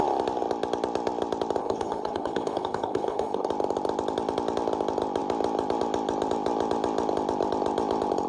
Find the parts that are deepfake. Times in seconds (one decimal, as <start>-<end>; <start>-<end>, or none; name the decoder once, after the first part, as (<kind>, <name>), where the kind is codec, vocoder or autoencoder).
1.6-3.5 (codec, HILCodec)